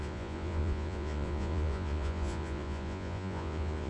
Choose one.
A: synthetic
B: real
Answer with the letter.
A